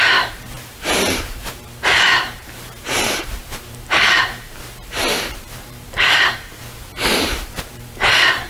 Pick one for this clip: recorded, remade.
remade